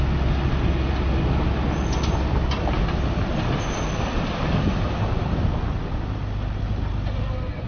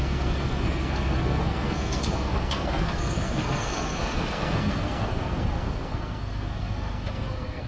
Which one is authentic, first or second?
first